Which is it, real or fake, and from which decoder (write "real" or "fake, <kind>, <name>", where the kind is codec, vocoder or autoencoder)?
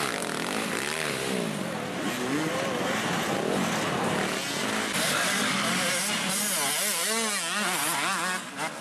real